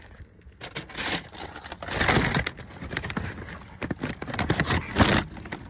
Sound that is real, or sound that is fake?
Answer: real